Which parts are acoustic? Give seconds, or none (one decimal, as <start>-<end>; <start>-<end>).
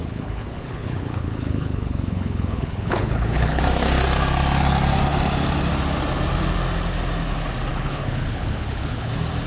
3.6-7.7; 9.1-9.5